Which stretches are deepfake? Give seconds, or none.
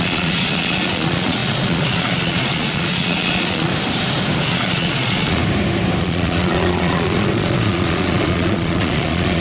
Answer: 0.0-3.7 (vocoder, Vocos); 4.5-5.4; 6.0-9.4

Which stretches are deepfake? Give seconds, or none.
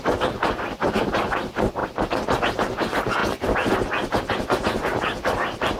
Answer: none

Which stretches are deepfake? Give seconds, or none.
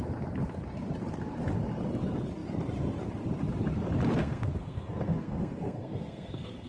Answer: 4.2-6.7 (codec, SNAC)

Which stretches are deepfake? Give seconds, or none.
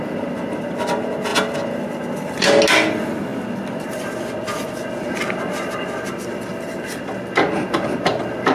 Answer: none